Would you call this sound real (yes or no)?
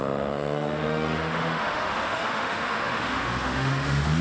no